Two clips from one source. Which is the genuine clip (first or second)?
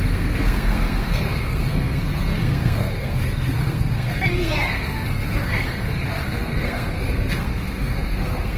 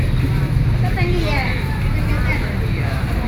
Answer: second